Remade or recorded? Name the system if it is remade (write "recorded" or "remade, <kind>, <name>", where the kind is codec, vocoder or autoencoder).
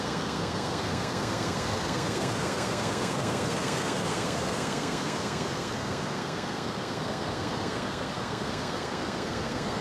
remade, codec, SNAC